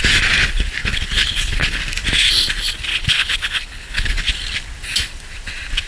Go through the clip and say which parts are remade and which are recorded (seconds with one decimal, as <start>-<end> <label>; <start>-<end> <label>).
0.0-0.8 recorded; 0.8-1.8 remade; 1.8-2.9 recorded; 2.9-4.2 remade; 4.2-5.9 recorded